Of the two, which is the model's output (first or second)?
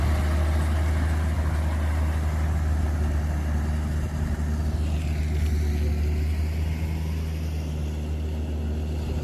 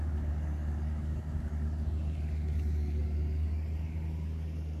second